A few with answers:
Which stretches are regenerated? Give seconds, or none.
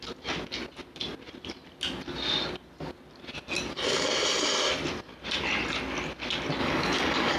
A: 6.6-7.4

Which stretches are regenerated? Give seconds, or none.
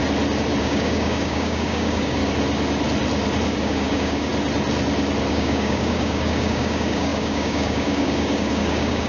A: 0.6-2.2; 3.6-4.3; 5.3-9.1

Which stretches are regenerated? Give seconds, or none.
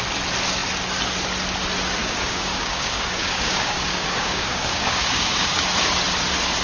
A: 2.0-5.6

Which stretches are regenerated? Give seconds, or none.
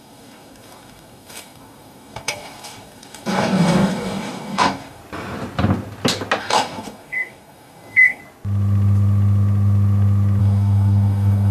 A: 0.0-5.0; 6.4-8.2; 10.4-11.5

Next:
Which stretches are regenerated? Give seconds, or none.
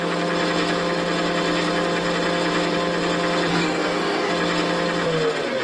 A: 3.5-4.3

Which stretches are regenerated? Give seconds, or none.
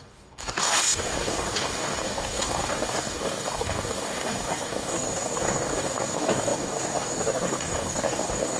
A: 0.0-8.6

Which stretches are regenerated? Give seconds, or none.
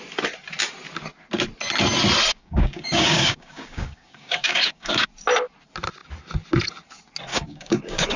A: 2.3-5.1; 7.3-8.2